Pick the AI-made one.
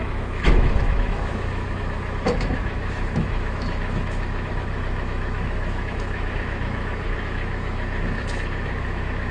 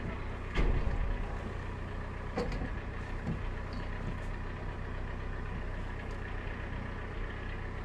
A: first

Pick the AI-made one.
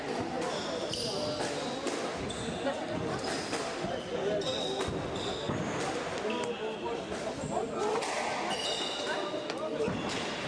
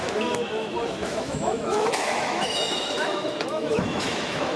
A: second